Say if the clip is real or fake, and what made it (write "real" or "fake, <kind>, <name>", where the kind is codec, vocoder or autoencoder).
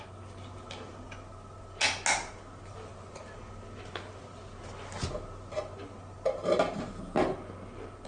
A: real